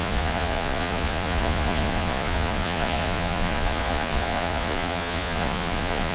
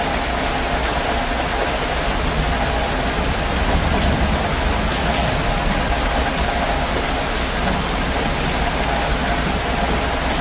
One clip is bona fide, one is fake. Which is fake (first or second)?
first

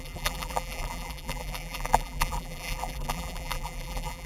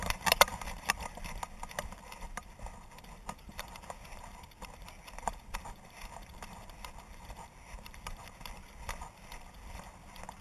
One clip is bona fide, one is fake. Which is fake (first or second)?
first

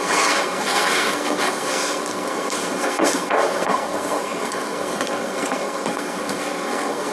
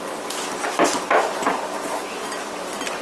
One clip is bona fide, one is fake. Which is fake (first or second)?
first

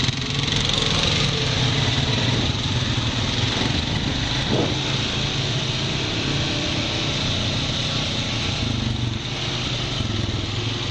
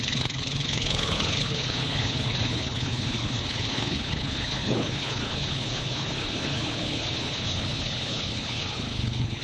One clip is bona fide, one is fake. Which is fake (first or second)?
second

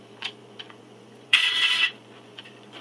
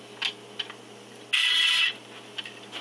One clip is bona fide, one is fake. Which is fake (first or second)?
first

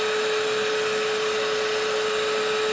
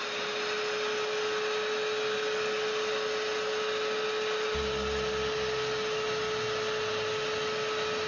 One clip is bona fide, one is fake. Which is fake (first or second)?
first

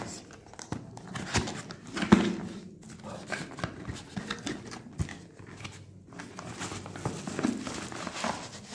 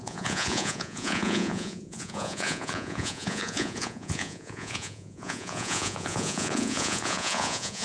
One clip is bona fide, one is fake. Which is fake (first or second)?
second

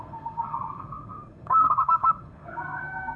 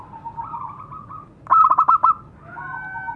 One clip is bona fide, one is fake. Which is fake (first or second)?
first